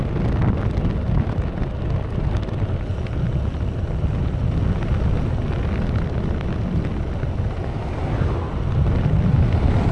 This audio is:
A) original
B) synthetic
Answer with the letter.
A